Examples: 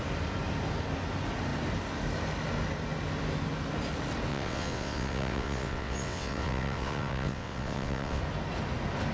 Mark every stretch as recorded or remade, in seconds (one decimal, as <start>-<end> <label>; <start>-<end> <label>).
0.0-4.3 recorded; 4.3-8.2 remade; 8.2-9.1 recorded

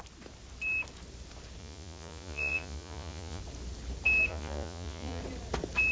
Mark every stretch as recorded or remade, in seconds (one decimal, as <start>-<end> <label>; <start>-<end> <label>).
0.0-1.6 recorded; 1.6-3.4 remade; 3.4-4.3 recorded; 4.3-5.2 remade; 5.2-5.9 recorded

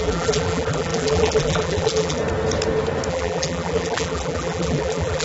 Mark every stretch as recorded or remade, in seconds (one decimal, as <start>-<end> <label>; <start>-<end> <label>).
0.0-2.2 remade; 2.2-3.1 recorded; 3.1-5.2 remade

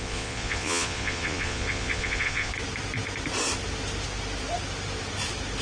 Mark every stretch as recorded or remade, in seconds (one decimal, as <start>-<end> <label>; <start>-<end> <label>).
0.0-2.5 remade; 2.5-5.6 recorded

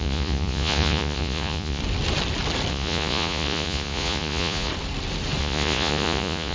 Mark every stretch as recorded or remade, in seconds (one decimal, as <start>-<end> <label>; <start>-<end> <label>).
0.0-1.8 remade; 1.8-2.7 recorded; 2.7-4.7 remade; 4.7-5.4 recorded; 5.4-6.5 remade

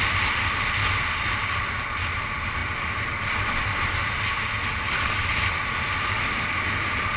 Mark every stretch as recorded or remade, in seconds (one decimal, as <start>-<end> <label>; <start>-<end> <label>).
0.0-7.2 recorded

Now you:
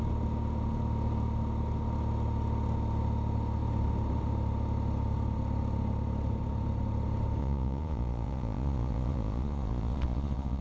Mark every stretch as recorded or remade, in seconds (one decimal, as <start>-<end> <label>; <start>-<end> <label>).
0.0-7.4 recorded; 7.4-10.6 remade